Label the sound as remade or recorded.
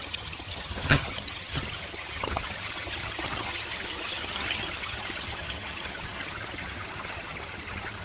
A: remade